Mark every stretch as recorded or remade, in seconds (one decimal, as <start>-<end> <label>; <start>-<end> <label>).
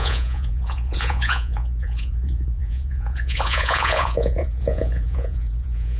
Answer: 0.0-6.0 remade